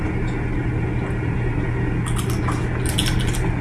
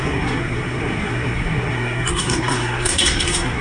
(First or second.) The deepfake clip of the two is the second